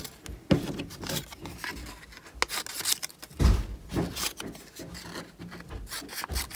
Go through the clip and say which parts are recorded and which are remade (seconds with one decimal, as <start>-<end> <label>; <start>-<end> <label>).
0.0-6.6 recorded